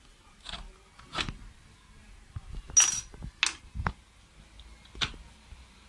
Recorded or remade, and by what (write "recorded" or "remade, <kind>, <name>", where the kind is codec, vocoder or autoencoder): recorded